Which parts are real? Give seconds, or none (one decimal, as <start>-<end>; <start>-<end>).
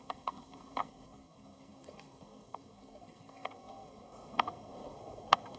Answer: none